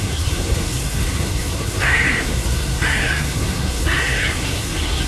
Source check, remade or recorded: remade